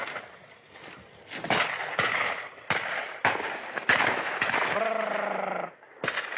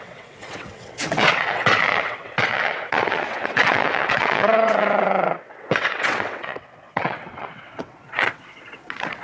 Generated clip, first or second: second